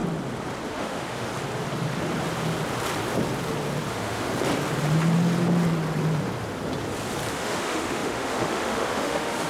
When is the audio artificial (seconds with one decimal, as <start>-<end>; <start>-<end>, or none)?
0.7-1.3; 3.9-4.3; 7.3-9.5